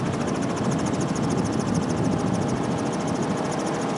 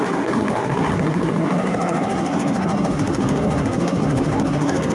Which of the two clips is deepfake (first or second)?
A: second